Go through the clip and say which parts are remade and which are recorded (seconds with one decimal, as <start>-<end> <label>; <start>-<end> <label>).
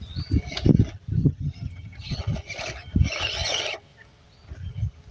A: 0.0-1.2 recorded; 1.2-2.2 remade; 2.2-5.1 recorded